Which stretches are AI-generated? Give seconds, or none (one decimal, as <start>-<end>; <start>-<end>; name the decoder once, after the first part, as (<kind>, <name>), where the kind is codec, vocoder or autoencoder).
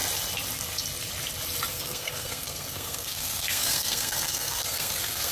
1.7-5.3 (codec, SNAC)